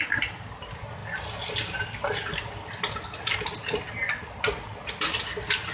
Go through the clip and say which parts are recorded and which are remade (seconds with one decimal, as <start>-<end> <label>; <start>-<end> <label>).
0.0-5.7 recorded